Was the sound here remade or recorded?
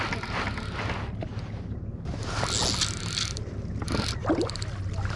recorded